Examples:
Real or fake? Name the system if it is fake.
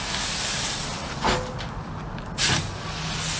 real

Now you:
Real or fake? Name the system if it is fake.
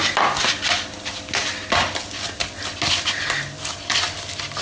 real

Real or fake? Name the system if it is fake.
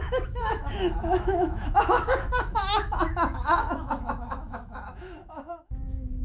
fake, autoencoder, DAC-VAE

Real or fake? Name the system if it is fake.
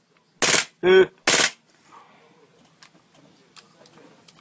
real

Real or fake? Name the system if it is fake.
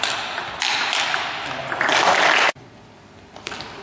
real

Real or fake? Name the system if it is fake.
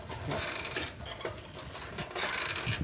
real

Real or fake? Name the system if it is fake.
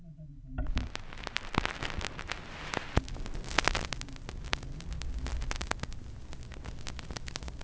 real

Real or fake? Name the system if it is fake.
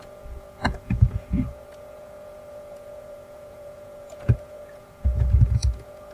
fake, vocoder, Vocos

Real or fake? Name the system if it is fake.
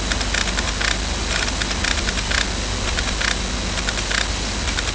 real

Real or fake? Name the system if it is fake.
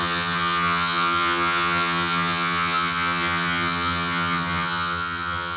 fake, vocoder, HiFi-GAN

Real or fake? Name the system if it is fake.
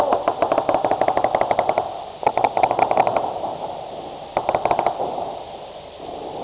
real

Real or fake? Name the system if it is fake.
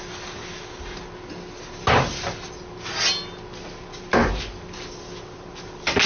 real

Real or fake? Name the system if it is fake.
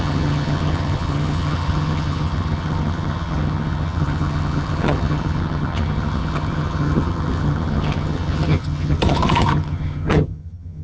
fake, vocoder, HiFi-GAN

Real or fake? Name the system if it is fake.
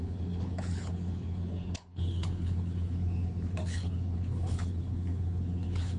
fake, codec, HILCodec